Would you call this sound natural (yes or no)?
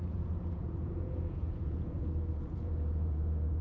no